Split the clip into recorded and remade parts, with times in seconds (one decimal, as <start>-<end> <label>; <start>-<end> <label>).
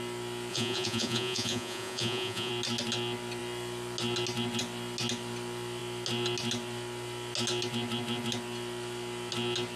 0.0-0.5 recorded; 0.5-2.5 remade; 2.5-9.8 recorded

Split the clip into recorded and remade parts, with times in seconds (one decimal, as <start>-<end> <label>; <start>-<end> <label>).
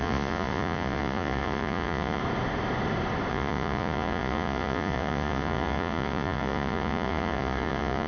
0.0-2.2 remade; 2.2-3.3 recorded; 3.3-8.1 remade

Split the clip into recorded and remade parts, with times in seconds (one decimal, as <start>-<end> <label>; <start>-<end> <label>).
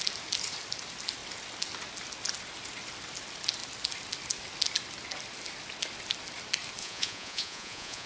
0.0-6.8 recorded; 6.8-8.1 remade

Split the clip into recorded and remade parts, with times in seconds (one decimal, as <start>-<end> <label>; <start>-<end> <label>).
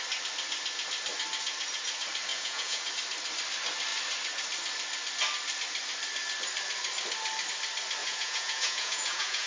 0.0-2.3 recorded; 2.3-2.9 remade; 2.9-8.0 recorded; 8.0-9.5 remade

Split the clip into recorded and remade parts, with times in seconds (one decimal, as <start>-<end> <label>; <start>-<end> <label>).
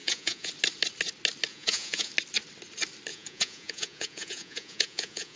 0.0-0.5 remade; 0.5-1.5 recorded; 1.5-2.1 remade; 2.1-3.1 recorded; 3.1-5.4 remade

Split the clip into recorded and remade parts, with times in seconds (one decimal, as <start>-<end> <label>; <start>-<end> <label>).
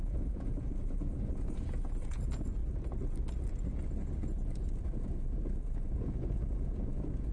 0.0-2.6 remade; 2.6-4.2 recorded; 4.2-7.3 remade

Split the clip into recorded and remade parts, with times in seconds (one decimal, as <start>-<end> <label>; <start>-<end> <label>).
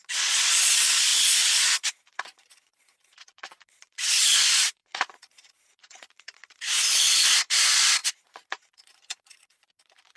0.0-10.2 remade